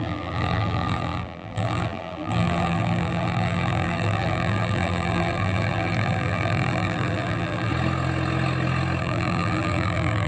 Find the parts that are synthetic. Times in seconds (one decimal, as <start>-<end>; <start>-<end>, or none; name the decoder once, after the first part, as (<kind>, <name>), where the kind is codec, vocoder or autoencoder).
0.0-7.7 (vocoder, BigVGAN v2); 9.0-10.3